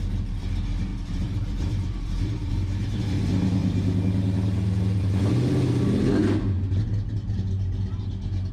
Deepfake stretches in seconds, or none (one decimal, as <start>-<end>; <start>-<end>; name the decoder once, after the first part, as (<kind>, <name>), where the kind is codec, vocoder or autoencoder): 0.9-2.5 (vocoder, BigVGAN v2)